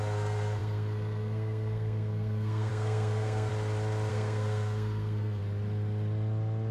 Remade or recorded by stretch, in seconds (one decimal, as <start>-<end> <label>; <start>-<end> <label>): 0.0-3.5 remade; 3.5-4.1 recorded; 4.1-5.4 remade; 5.4-6.7 recorded